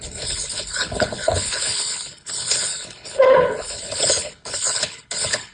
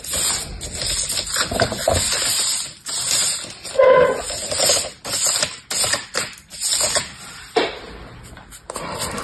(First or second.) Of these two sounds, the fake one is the first